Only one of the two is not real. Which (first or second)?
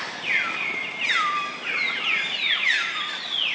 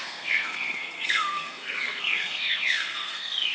second